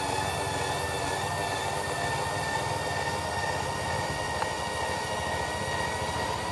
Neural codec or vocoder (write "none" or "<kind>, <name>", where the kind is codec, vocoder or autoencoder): none